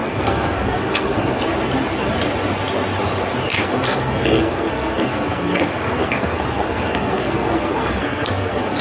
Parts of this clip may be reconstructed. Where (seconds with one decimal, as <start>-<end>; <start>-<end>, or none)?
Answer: 0.0-1.4; 3.5-8.8